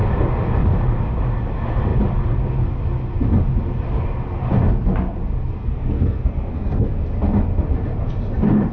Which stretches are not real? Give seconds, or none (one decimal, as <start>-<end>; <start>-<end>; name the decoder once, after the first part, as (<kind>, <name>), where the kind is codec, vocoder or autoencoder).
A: 5.6-7.0 (codec, SNAC)